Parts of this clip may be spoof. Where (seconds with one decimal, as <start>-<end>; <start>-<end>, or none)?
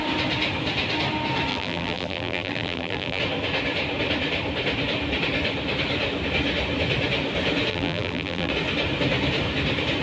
1.5-3.2; 7.7-8.5